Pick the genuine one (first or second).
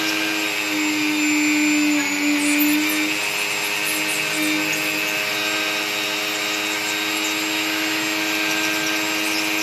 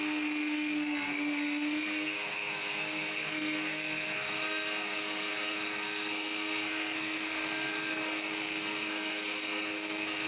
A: first